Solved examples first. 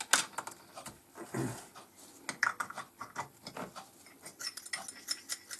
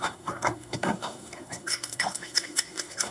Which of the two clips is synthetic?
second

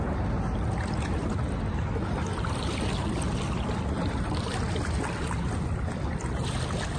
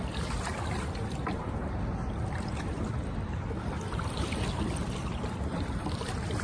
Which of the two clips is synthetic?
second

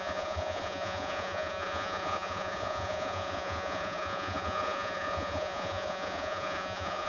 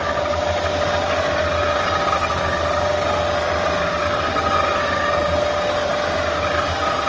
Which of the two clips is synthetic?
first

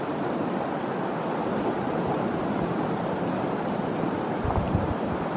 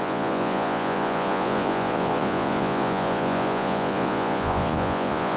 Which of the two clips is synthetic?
second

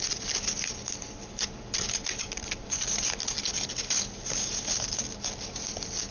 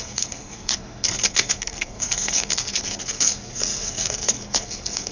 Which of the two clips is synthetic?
second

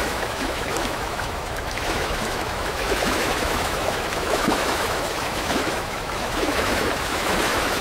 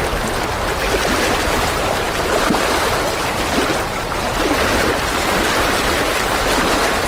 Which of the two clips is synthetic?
first